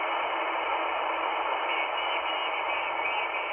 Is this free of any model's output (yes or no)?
yes